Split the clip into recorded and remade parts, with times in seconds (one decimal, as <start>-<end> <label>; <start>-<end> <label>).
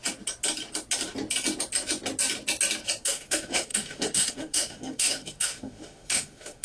0.0-3.0 recorded; 3.0-6.6 remade